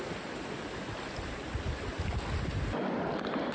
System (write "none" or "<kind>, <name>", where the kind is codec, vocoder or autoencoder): none